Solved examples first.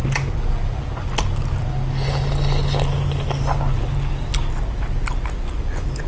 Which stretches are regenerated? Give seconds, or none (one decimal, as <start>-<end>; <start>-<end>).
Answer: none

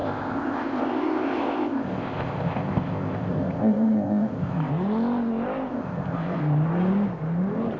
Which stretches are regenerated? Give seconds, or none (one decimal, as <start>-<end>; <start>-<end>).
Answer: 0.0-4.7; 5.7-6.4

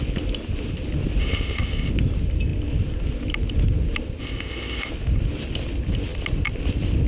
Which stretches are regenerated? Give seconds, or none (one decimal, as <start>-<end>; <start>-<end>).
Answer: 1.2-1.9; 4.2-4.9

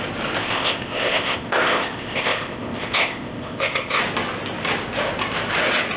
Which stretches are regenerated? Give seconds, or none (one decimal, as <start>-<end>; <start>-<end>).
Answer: 0.4-4.0